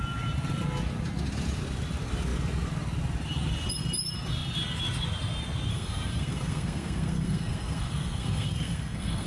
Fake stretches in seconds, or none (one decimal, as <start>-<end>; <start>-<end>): 5.7-9.3